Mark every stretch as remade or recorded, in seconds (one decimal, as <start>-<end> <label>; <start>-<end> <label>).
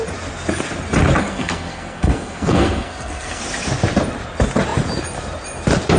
0.0-1.2 recorded; 1.2-3.4 remade; 3.4-6.0 recorded